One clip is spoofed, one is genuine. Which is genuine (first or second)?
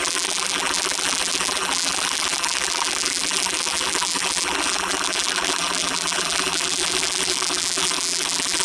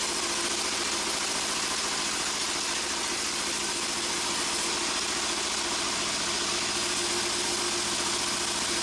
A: second